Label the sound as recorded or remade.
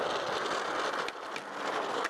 recorded